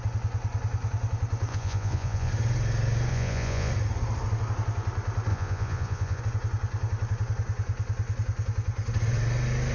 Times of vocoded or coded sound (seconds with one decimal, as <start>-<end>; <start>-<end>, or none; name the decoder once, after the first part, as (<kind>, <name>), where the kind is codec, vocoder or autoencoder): 1.5-2.3 (vocoder, Vocos); 3.1-3.7; 5.3-6.2